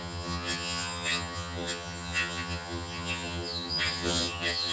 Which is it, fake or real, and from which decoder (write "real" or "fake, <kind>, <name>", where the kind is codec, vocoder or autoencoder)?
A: fake, vocoder, HiFi-GAN